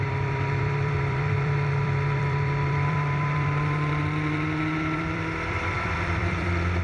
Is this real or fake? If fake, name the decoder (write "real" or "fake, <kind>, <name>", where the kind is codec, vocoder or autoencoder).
fake, vocoder, BigVGAN v2